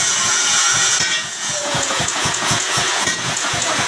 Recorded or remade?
remade